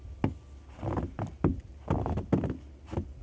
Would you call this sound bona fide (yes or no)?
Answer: yes